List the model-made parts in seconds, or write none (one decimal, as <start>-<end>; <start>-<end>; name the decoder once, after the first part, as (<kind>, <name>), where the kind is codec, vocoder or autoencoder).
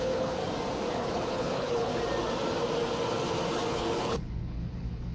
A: 0.0-0.4 (codec, HILCodec); 0.9-1.9; 3.7-5.1